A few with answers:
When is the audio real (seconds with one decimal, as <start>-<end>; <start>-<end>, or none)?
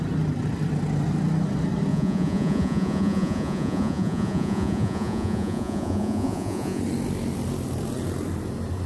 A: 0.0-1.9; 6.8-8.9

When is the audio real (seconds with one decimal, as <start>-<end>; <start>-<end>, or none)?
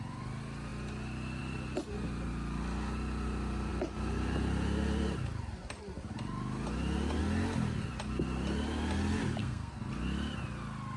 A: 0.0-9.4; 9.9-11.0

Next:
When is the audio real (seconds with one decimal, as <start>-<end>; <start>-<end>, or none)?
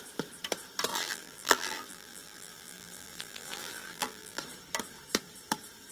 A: 0.0-0.9; 4.4-5.9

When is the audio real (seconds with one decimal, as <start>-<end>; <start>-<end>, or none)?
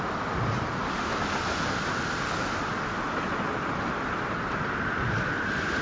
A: 0.0-5.8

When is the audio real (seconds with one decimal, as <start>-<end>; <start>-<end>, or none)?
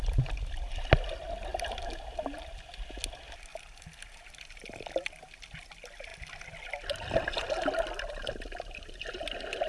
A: 0.0-1.5; 2.5-3.5; 4.3-9.7